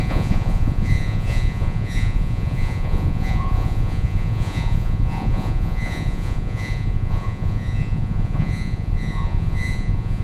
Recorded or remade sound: remade